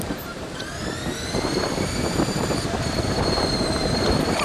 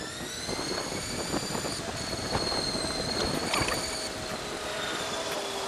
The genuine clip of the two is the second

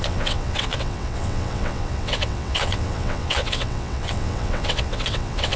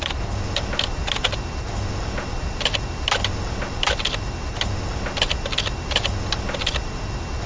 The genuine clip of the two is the second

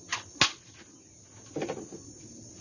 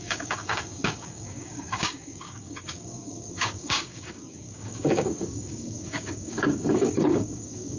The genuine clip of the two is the first